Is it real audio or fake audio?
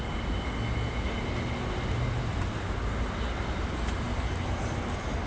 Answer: real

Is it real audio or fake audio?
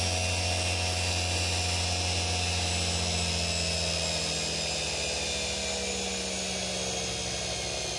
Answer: real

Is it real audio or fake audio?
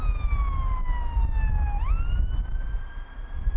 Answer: real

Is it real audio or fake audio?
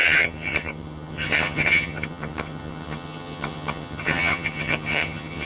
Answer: fake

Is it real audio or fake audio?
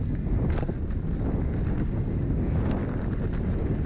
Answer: real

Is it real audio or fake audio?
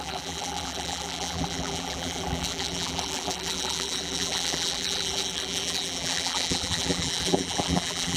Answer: fake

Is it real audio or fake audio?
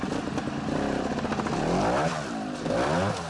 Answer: real